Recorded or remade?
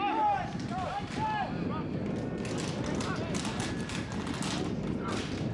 recorded